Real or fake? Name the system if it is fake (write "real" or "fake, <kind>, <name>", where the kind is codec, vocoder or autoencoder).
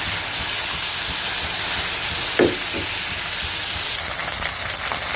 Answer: real